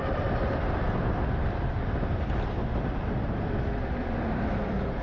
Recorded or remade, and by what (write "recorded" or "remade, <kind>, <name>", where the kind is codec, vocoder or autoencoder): remade, vocoder, BigVGAN v2